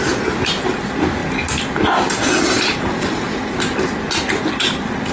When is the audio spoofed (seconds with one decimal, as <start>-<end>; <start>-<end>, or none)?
none